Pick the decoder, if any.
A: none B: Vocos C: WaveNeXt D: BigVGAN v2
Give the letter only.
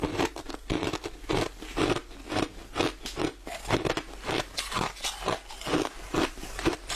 A